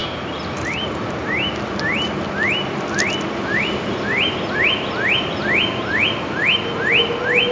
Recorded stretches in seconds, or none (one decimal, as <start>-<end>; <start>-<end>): 0.0-7.5